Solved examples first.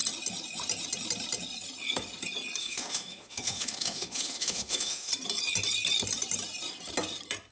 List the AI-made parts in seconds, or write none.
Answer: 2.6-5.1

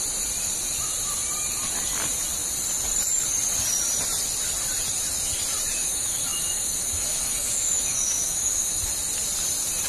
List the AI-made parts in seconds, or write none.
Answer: 5.8-8.8

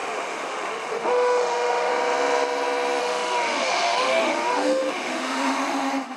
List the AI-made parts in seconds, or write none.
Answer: 0.0-1.9; 3.0-6.2

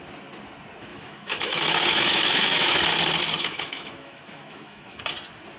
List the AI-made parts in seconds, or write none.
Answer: 0.9-2.8; 3.4-5.0

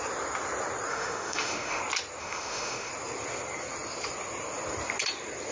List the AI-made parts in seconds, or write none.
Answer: 0.9-1.8; 2.2-2.9

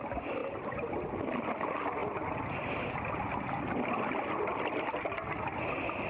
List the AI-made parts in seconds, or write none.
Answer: none

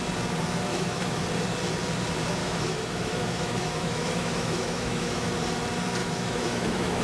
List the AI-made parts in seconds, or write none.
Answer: 0.7-1.2; 2.4-5.3; 6.0-7.0